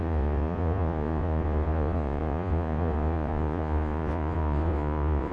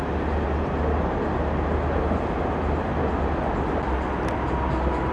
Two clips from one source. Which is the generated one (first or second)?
first